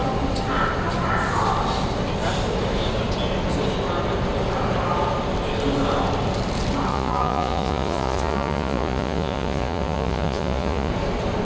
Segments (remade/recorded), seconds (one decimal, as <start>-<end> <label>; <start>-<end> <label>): 0.0-6.9 recorded; 6.9-10.9 remade; 10.9-11.4 recorded